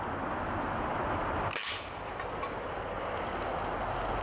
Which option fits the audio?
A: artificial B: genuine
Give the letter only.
B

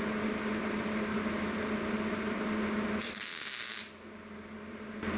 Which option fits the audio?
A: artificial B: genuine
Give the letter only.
B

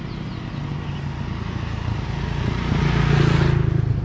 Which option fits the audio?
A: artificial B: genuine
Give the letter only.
B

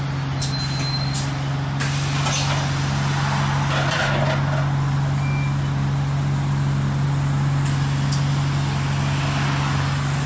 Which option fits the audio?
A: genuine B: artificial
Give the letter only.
A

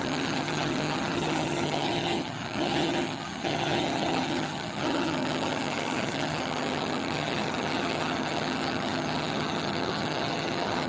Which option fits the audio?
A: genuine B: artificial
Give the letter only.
B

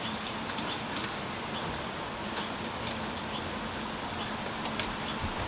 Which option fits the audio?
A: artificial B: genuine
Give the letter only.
B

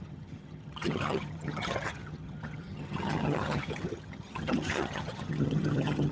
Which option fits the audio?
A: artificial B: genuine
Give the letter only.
A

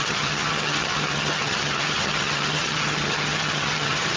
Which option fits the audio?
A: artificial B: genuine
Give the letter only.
A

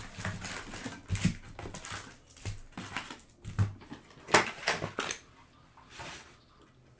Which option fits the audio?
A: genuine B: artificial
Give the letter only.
A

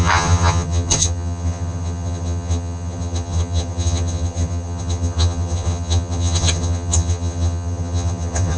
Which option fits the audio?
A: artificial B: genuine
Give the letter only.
A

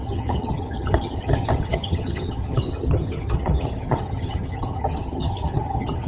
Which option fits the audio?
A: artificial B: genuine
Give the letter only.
A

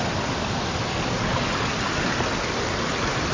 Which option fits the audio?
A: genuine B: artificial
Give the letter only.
A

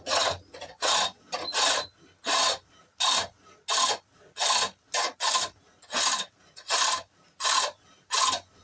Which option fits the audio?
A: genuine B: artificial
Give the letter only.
A